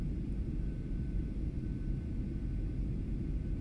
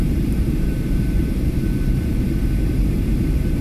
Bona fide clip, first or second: first